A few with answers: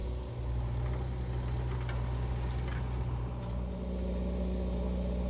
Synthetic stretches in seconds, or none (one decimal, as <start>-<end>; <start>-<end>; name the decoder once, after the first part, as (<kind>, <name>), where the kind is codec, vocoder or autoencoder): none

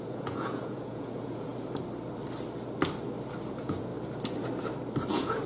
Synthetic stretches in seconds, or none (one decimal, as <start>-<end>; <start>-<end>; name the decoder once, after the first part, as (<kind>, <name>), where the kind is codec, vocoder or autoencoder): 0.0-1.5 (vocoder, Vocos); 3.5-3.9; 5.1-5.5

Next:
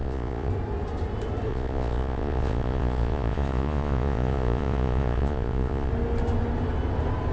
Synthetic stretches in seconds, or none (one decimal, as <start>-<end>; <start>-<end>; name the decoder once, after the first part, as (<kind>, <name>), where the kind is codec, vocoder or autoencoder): 0.0-0.5 (vocoder, Vocos); 1.5-5.9

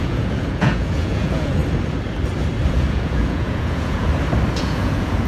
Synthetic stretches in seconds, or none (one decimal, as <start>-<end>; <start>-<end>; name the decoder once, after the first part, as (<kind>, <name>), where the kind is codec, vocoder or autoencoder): 0.0-1.6 (vocoder, Vocos); 2.7-4.1; 4.6-5.3